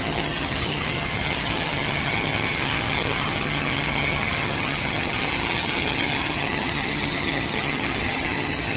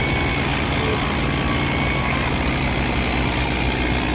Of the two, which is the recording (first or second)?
second